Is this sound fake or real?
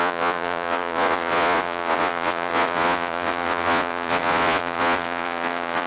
fake